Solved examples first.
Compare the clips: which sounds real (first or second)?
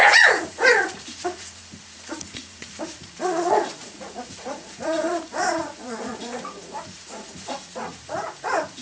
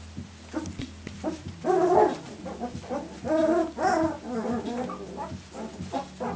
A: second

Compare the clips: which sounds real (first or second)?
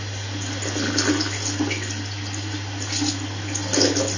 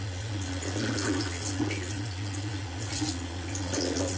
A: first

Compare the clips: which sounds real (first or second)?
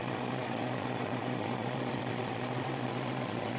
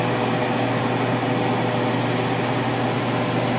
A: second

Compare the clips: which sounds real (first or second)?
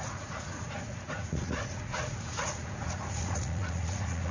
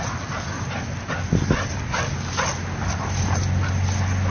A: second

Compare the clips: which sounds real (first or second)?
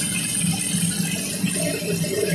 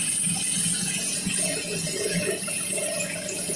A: first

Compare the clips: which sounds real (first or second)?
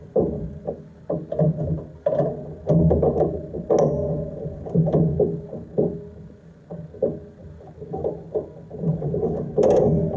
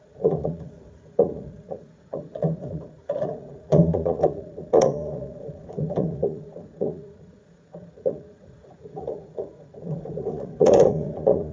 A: first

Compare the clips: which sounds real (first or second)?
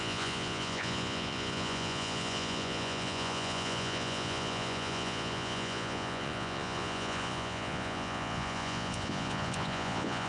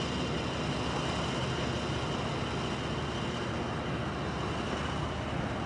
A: second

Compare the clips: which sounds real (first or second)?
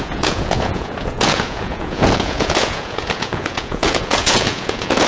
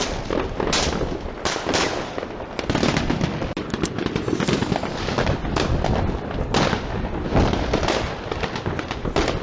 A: second